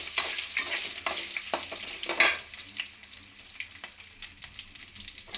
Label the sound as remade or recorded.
recorded